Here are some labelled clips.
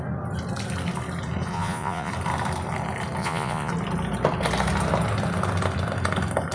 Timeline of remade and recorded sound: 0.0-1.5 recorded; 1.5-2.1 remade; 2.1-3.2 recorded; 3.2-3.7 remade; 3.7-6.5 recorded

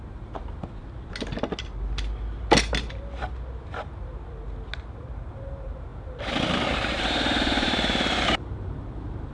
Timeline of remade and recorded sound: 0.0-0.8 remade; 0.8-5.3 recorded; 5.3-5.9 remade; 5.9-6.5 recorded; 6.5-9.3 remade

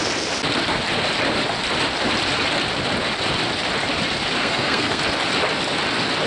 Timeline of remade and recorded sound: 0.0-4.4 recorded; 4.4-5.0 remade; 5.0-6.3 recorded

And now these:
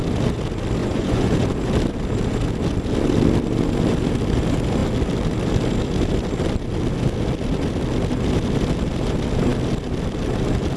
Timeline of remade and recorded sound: 0.0-0.8 recorded; 0.8-1.3 remade; 1.3-10.8 recorded